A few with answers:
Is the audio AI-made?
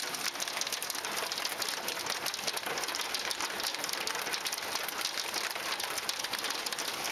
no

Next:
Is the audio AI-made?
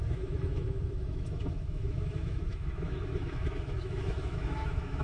yes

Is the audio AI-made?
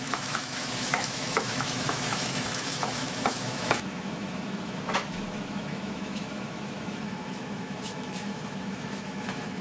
yes